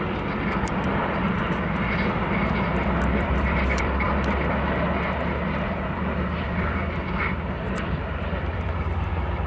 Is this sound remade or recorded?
remade